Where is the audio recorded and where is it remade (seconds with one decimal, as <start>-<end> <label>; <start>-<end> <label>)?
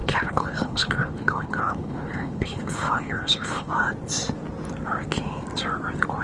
0.0-3.7 remade; 3.7-6.2 recorded